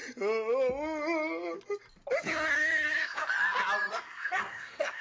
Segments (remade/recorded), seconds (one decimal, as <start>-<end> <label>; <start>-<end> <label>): 0.0-2.3 recorded; 2.3-3.3 remade; 3.3-3.9 recorded; 3.9-5.0 remade